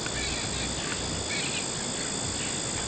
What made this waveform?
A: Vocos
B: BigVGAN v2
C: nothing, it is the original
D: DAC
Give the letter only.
C